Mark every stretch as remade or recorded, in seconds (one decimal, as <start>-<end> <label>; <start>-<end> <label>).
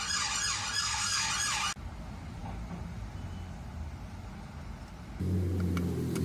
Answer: 0.0-0.8 recorded; 0.8-1.3 remade; 1.3-6.2 recorded